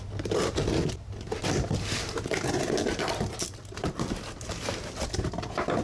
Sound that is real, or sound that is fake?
real